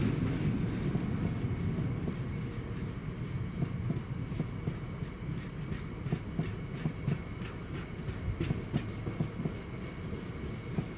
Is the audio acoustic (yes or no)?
yes